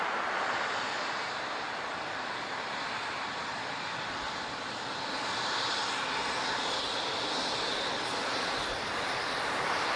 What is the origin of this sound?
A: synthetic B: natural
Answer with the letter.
B